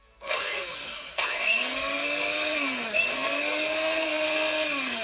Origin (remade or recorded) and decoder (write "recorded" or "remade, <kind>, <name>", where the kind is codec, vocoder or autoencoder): remade, codec, SNAC